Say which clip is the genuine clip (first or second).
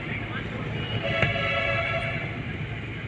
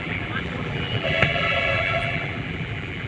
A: first